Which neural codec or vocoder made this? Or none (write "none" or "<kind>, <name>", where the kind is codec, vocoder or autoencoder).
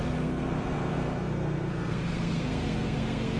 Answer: codec, SNAC